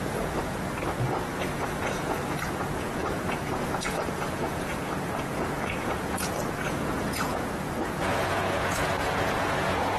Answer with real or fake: fake